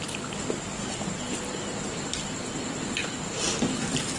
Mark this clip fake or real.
fake